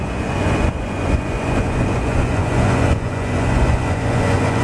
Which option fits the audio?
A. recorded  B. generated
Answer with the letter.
B